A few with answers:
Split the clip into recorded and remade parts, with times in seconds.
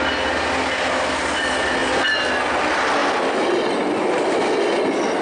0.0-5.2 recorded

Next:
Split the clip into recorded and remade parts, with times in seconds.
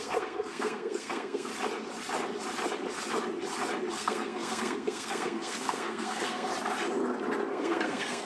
0.0-1.5 remade; 1.5-3.9 recorded; 3.9-6.5 remade; 6.5-7.5 recorded; 7.5-8.3 remade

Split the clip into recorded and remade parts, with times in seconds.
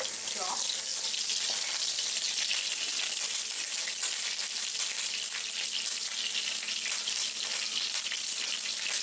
0.0-9.0 recorded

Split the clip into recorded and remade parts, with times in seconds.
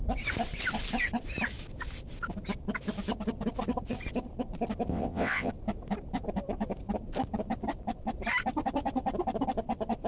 0.0-4.9 recorded; 4.9-5.5 remade; 5.5-10.1 recorded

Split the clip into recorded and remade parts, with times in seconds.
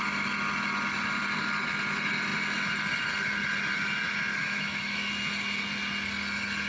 0.0-4.4 recorded; 4.4-5.1 remade; 5.1-6.7 recorded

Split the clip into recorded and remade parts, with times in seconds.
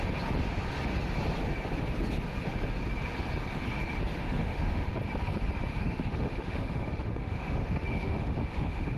0.0-4.1 recorded; 4.1-4.9 remade; 4.9-5.7 recorded; 5.7-9.0 remade